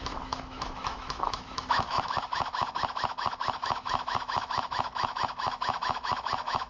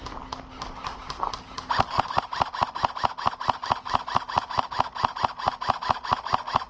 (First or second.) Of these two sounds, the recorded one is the second